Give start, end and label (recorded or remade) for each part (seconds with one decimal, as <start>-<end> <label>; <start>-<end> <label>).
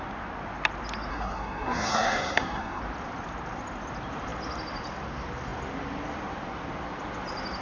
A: 0.0-1.1 recorded; 1.1-2.8 remade; 2.8-7.6 recorded